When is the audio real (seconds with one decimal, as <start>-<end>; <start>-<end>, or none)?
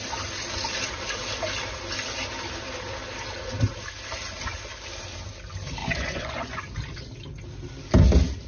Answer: 0.0-5.8; 6.6-8.5